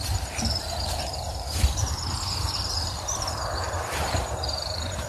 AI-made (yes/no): yes